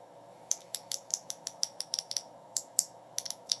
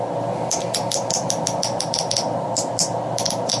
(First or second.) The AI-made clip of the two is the first